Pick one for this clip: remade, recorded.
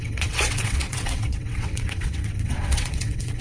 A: remade